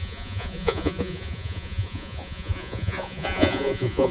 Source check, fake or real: fake